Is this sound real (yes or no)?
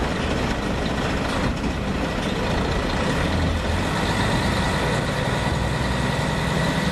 yes